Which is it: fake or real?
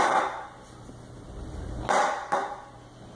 real